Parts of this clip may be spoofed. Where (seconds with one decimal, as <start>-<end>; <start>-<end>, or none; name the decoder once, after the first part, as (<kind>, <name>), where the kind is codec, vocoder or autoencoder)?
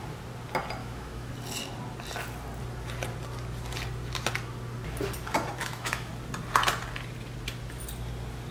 0.8-1.3 (autoencoder, DAC-VAE); 5.6-6.1